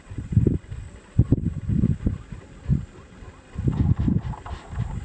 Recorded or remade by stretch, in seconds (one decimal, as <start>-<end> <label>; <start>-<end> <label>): 0.0-5.0 recorded